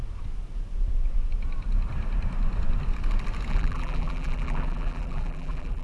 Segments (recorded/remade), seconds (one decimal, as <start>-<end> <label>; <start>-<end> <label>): 0.0-3.5 recorded; 3.5-5.8 remade